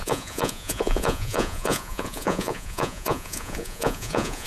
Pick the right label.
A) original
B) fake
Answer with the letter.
B